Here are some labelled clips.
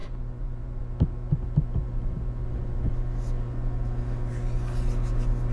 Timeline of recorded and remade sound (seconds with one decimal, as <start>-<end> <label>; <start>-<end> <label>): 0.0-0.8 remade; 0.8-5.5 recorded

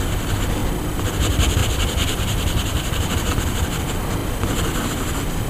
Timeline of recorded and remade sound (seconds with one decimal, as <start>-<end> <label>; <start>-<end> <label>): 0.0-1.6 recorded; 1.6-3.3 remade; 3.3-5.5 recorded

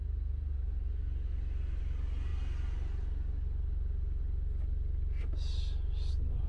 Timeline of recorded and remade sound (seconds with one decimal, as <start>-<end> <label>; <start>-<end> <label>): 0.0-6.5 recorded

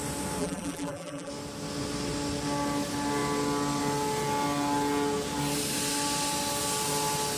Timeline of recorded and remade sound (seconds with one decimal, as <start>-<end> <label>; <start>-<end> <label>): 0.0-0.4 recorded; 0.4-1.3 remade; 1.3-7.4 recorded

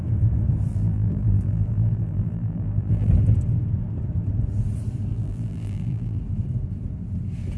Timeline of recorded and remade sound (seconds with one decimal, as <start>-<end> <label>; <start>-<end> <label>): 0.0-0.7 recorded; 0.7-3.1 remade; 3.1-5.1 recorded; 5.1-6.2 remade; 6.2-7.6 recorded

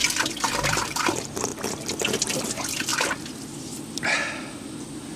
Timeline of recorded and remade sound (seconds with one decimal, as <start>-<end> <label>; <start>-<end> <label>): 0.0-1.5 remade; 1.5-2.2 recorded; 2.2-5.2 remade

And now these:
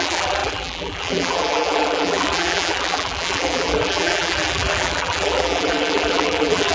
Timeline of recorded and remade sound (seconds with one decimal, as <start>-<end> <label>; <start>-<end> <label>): 0.0-6.7 remade

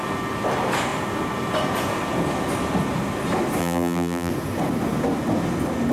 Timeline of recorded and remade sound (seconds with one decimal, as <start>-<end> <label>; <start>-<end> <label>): 0.0-3.6 recorded; 3.6-4.3 remade; 4.3-5.9 recorded